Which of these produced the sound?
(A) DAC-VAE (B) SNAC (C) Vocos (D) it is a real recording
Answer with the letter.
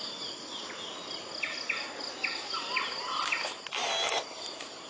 D